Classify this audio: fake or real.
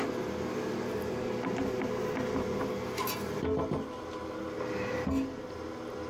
real